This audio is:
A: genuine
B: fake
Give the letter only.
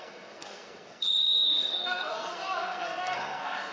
B